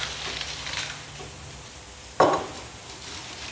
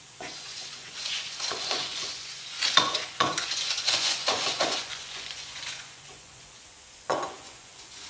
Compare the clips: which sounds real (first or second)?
first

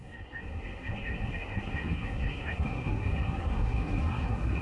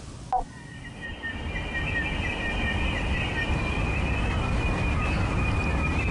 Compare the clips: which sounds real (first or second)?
second